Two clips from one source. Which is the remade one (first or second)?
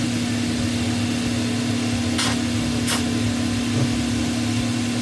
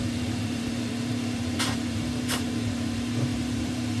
second